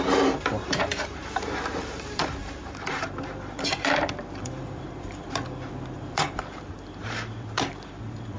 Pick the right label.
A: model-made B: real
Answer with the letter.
A